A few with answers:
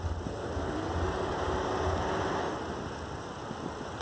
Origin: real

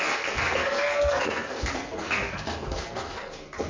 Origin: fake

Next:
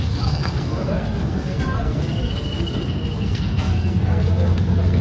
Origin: fake